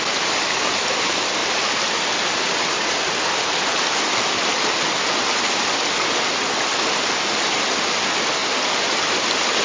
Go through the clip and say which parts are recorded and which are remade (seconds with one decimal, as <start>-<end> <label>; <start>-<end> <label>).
0.0-9.6 recorded